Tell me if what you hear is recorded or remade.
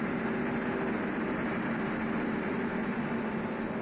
recorded